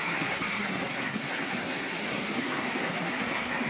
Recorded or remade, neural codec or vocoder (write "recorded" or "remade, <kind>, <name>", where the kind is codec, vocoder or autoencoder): remade, codec, SNAC